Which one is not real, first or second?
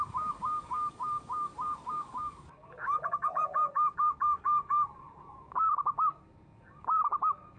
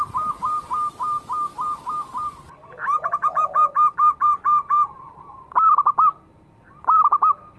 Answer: first